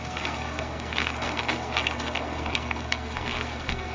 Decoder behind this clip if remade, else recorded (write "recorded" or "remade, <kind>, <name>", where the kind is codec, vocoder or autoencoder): remade, codec, SNAC